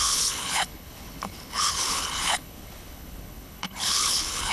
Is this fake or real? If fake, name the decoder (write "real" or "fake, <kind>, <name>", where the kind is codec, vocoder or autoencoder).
fake, codec, HILCodec